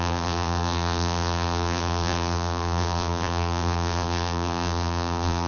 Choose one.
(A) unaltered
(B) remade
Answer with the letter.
B